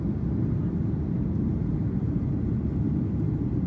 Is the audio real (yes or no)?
yes